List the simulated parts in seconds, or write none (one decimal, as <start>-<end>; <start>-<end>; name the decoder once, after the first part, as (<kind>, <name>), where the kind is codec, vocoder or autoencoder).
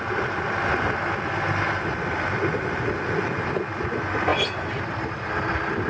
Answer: none